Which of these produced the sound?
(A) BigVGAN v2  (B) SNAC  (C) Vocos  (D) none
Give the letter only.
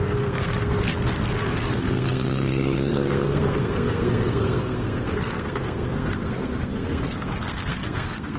B